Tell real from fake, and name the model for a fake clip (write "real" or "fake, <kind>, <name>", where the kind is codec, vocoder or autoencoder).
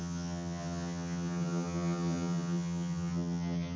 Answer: fake, vocoder, HiFi-GAN